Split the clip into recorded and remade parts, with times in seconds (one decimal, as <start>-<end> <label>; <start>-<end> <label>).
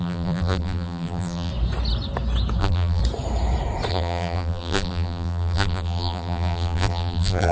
0.0-1.5 remade; 1.5-2.6 recorded; 2.6-3.0 remade; 3.0-3.9 recorded; 3.9-7.5 remade